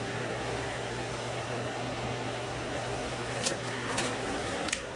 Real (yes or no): no